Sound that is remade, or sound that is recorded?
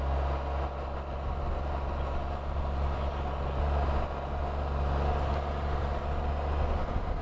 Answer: recorded